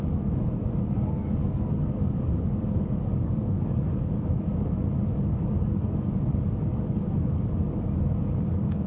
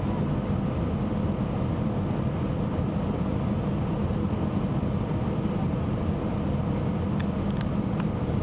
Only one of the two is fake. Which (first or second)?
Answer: first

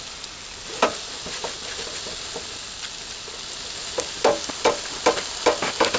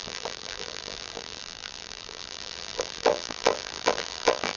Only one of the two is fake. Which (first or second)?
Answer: second